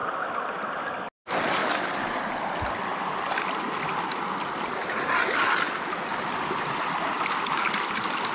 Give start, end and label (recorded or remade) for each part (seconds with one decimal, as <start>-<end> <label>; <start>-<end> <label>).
0.0-1.6 recorded; 1.6-2.2 remade; 2.2-8.3 recorded